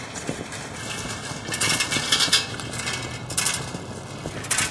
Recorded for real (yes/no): yes